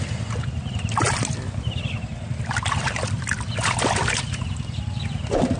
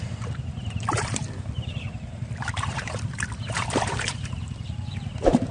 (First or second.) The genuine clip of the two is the first